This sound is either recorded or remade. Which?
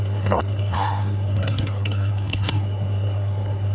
remade